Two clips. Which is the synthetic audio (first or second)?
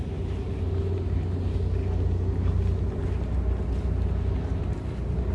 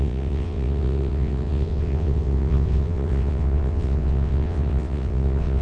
second